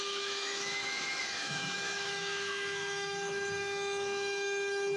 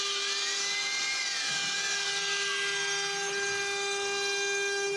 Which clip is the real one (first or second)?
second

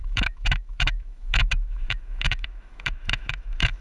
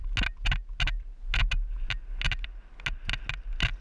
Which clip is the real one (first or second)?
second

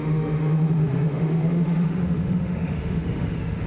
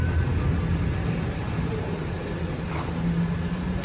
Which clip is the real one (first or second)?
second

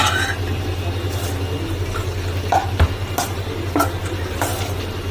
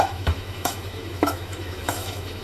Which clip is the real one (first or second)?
first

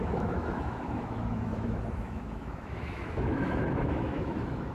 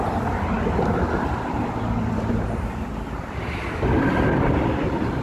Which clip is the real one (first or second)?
second